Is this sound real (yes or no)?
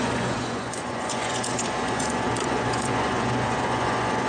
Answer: no